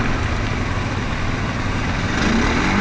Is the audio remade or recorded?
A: recorded